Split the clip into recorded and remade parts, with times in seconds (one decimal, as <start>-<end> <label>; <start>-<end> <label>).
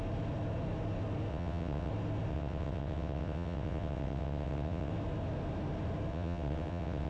0.0-1.3 recorded; 1.3-1.9 remade; 1.9-2.3 recorded; 2.3-4.9 remade; 4.9-6.1 recorded; 6.1-7.1 remade